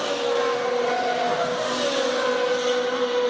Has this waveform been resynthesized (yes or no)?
no